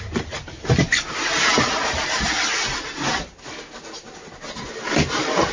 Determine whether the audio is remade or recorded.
recorded